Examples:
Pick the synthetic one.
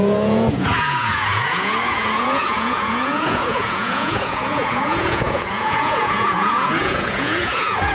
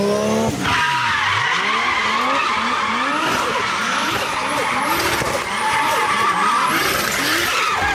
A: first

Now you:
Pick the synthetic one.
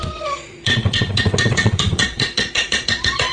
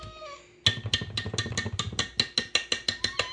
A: first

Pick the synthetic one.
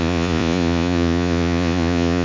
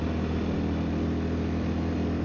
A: first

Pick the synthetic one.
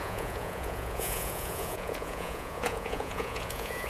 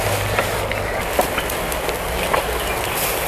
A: first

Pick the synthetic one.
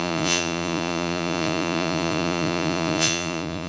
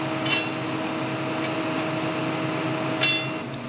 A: first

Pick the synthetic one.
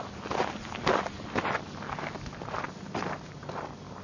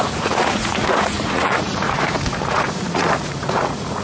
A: second